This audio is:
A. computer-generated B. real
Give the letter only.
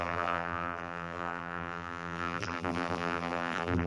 A